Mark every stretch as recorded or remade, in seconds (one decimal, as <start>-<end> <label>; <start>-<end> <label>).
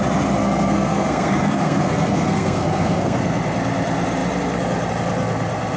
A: 0.0-0.4 recorded; 0.4-3.2 remade; 3.2-5.8 recorded